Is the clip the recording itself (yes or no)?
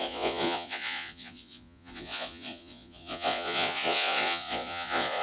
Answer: no